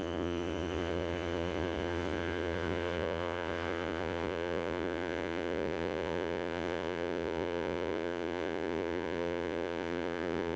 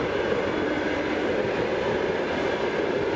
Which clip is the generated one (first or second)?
first